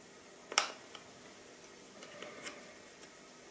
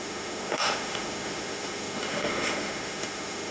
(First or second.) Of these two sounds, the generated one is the second